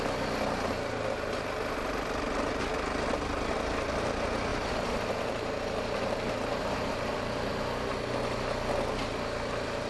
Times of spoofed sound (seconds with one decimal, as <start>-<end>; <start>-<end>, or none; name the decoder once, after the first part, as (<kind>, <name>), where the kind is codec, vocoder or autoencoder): 4.5-7.5 (vocoder, BigVGAN v2)